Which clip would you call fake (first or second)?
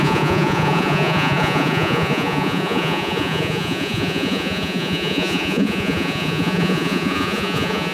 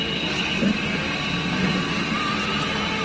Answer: first